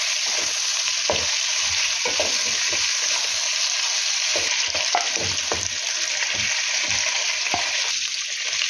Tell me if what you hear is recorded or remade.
recorded